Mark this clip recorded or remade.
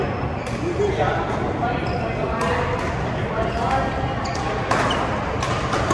recorded